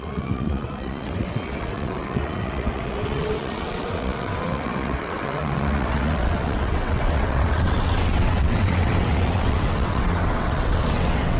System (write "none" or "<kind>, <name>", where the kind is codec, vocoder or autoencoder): vocoder, WaveNeXt